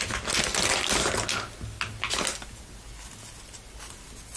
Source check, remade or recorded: recorded